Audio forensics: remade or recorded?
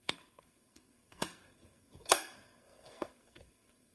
remade